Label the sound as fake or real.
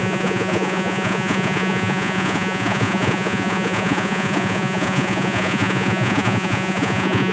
fake